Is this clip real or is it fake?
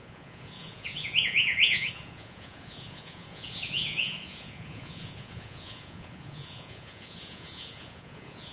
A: fake